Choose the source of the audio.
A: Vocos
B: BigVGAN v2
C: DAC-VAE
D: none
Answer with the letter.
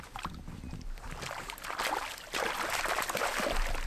D